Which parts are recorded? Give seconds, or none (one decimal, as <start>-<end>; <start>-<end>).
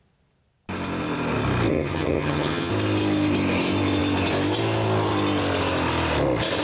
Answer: 0.0-1.7; 2.7-6.6